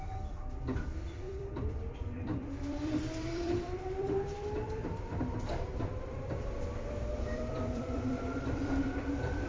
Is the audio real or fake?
fake